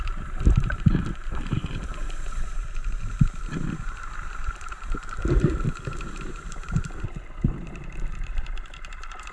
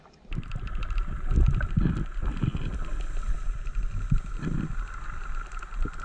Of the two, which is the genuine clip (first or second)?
second